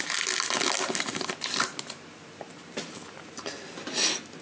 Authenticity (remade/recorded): recorded